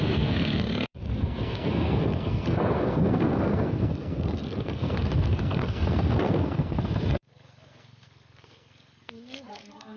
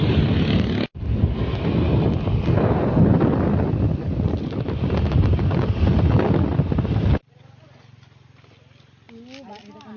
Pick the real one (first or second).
second